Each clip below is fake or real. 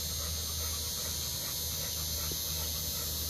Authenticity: real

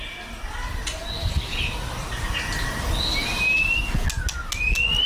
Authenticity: real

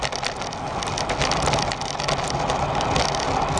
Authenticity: real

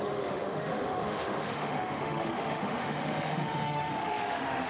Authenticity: fake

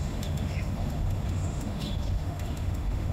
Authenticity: fake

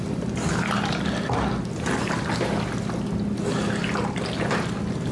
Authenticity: real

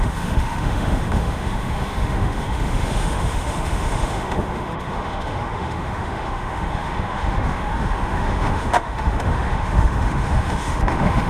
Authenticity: fake